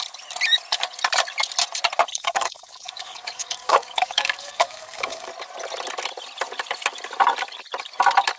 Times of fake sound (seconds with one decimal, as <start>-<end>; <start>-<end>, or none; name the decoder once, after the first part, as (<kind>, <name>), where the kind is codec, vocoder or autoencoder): 2.1-5.3 (codec, DAC)